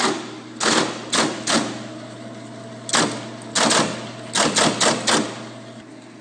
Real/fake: real